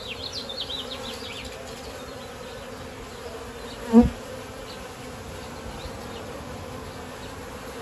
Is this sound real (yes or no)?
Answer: yes